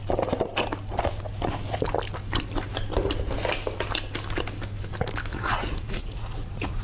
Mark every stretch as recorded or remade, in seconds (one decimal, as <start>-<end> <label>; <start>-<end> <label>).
0.0-5.3 recorded; 5.3-6.8 remade